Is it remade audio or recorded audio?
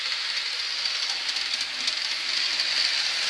recorded